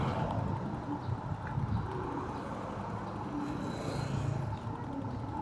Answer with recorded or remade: recorded